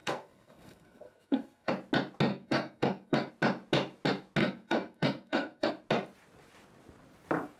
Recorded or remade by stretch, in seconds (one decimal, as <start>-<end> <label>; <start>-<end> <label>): 0.0-1.7 remade; 1.7-2.3 recorded; 2.3-3.3 remade; 3.3-4.4 recorded; 4.4-5.7 remade; 5.7-7.6 recorded